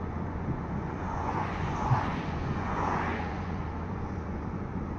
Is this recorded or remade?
remade